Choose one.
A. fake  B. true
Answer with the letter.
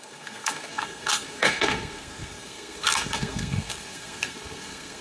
A